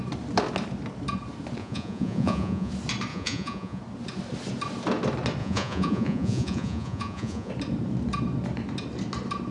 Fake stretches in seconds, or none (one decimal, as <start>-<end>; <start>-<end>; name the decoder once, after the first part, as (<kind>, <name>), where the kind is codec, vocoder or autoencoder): 1.6-2.7 (vocoder, Vocos); 3.1-3.8; 5.4-7.5